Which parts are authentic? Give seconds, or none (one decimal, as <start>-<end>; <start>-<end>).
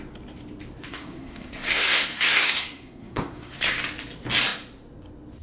0.0-0.9; 3.7-5.4